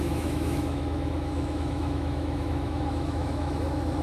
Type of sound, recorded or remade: remade